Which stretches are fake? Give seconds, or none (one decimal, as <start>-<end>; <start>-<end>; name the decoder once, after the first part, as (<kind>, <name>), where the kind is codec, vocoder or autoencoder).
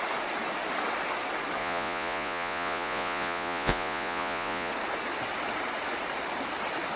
1.6-4.7 (vocoder, Vocos)